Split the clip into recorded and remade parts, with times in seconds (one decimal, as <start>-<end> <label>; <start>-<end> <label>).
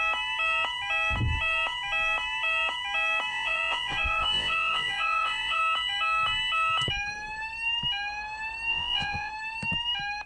0.0-3.3 recorded; 3.3-5.6 remade; 5.6-8.7 recorded; 8.7-9.3 remade; 9.3-10.3 recorded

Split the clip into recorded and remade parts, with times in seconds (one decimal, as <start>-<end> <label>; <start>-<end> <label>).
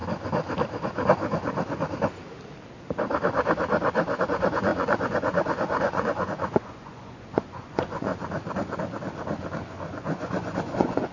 0.0-4.2 recorded; 4.2-8.1 remade; 8.1-9.9 recorded; 9.9-11.1 remade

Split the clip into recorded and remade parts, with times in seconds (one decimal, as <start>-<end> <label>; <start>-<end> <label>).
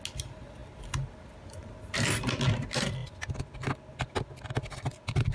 0.0-5.3 recorded